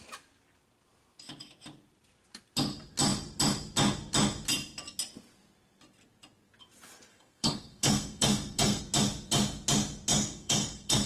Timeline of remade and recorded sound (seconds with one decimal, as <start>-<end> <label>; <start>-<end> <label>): 0.0-7.1 recorded; 7.1-8.8 remade; 8.8-10.1 recorded; 10.1-11.1 remade